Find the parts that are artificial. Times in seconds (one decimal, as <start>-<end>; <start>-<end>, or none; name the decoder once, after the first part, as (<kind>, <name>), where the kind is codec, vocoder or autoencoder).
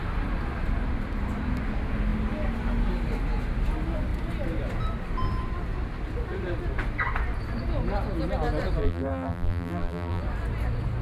8.8-10.2 (vocoder, BigVGAN v2)